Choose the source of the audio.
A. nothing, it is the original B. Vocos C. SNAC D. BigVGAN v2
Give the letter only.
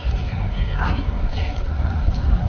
C